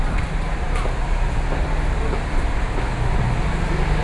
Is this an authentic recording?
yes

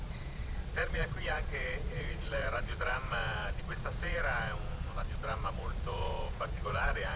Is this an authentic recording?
no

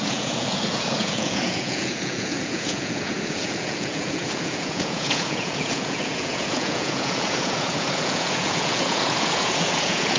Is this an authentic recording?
no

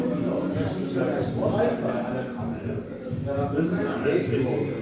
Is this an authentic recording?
yes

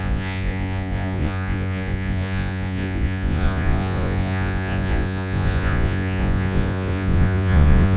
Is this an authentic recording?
no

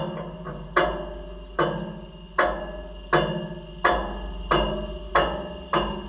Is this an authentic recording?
yes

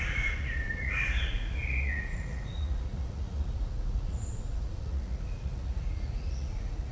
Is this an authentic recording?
no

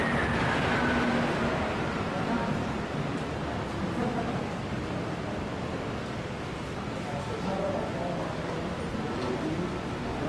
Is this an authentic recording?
yes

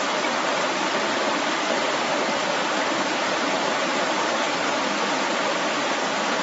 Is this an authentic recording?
yes